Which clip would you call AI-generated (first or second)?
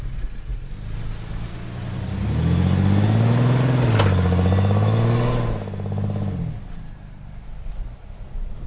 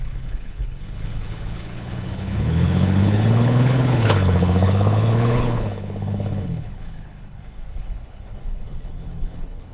second